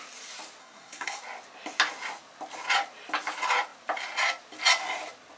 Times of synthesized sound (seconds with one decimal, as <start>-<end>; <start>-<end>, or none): 0.6-1.2